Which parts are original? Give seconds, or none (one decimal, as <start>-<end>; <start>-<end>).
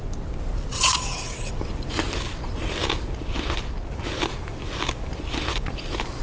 0.0-0.7; 1.5-6.2